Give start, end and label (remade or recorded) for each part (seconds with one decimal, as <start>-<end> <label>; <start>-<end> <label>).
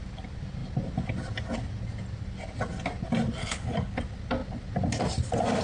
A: 0.0-3.4 recorded; 3.4-4.0 remade; 4.0-5.6 recorded